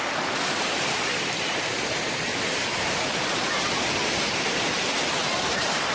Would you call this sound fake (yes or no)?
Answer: yes